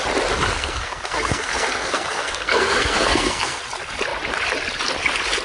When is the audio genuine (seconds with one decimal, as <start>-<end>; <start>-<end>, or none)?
0.0-0.5; 3.6-5.4